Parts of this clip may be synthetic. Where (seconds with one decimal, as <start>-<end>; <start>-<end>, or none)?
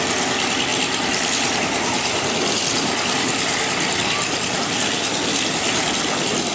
0.7-4.6